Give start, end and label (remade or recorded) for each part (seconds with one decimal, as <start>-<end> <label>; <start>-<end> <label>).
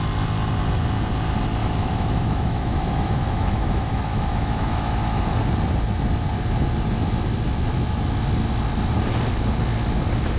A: 0.0-1.6 recorded; 1.6-5.4 remade; 5.4-10.4 recorded